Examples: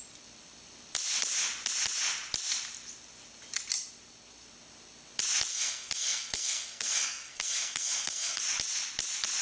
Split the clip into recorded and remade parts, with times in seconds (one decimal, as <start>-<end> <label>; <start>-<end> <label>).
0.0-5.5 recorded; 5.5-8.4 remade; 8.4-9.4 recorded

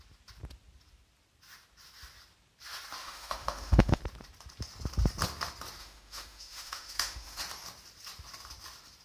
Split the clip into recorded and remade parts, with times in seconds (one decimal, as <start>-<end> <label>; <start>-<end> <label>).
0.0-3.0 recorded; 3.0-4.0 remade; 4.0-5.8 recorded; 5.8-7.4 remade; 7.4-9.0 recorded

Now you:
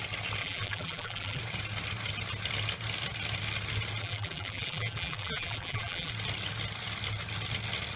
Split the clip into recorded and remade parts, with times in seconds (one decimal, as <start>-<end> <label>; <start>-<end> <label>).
0.0-0.4 recorded; 0.4-1.4 remade; 1.4-4.0 recorded; 4.0-6.1 remade; 6.1-8.0 recorded

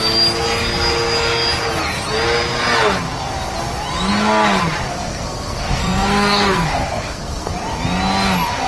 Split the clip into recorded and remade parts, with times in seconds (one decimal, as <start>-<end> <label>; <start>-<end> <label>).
0.0-4.9 recorded; 4.9-7.5 remade; 7.5-8.7 recorded

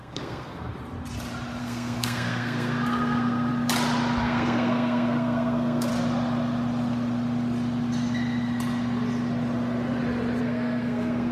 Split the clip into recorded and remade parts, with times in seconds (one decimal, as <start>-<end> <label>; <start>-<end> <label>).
0.0-0.7 remade; 0.7-1.6 recorded; 1.6-3.5 remade; 3.5-4.2 recorded; 4.2-5.9 remade; 5.9-10.4 recorded; 10.4-11.3 remade